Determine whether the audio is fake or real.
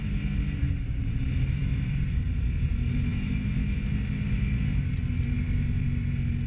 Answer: real